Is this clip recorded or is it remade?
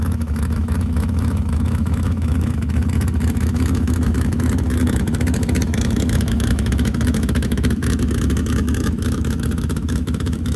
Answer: remade